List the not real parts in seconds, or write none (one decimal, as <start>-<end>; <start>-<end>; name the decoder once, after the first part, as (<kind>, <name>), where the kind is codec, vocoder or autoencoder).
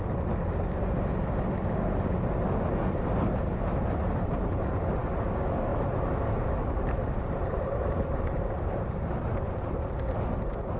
4.0-4.7 (vocoder, BigVGAN v2); 7.0-9.7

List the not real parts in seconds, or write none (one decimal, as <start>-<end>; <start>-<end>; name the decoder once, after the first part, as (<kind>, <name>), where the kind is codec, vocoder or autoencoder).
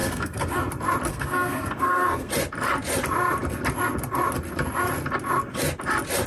0.0-0.7 (codec, SNAC); 1.1-2.3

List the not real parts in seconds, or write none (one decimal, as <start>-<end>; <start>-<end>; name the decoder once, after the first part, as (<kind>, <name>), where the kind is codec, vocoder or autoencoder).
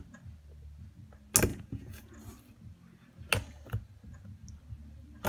1.5-2.1 (vocoder, Vocos)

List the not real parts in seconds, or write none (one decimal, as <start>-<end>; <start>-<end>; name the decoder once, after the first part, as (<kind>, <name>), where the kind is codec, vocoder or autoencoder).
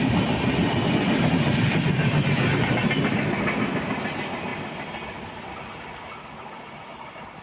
none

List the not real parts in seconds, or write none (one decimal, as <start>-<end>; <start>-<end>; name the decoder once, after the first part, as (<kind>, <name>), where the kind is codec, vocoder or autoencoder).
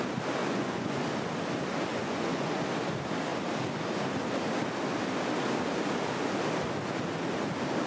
0.4-1.0 (vocoder, Vocos); 1.9-2.6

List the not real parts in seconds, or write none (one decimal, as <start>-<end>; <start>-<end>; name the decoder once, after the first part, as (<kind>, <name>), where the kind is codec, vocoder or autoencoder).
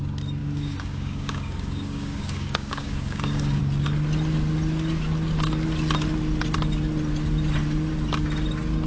0.4-3.6 (codec, DAC)